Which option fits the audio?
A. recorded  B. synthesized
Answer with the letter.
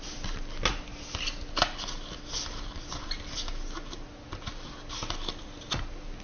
A